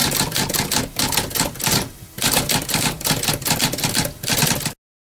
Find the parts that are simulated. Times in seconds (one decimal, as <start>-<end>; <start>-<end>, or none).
none